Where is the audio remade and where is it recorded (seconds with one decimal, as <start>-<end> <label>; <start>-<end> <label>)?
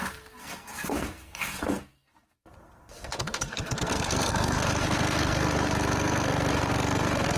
0.0-7.4 remade